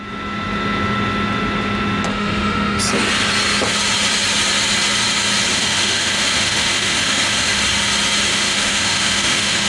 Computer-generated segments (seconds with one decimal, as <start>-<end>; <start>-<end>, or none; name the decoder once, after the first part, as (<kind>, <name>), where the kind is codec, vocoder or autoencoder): 2.1-2.8 (autoencoder, DAC-VAE); 5.5-7.6; 8.3-9.7